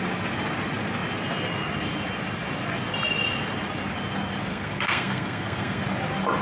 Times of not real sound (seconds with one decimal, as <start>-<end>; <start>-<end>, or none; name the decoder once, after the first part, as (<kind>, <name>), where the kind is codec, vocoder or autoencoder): 4.5-5.8 (codec, SNAC)